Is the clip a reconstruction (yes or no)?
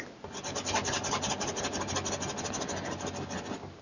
no